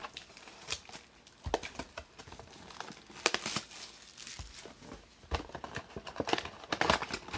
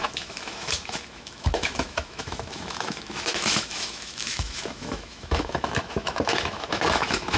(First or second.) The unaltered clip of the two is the first